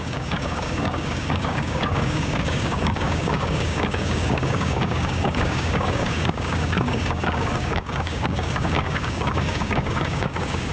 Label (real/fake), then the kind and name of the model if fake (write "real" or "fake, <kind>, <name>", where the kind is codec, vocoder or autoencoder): fake, codec, DAC